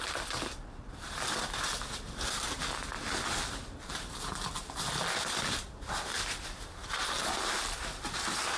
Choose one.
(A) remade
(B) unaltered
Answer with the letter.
A